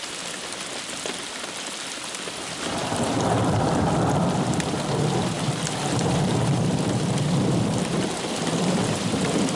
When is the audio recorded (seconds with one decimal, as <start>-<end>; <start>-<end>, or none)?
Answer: none